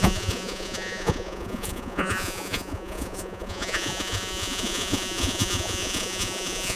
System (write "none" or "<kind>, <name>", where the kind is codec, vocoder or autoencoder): vocoder, Vocos